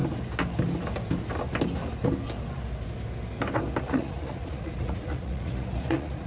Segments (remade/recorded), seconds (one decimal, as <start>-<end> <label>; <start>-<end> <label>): 0.0-3.8 recorded; 3.8-6.3 remade